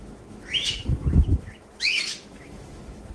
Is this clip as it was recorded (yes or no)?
no